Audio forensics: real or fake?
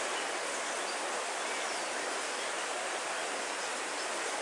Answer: real